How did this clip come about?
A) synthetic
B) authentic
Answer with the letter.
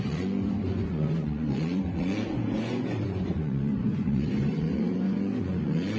A